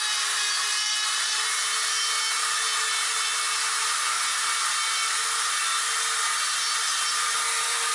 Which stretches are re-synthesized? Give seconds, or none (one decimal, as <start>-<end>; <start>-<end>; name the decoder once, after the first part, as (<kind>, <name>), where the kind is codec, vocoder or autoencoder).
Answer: none